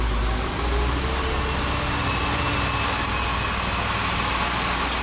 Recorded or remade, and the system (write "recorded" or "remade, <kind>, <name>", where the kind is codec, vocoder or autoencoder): recorded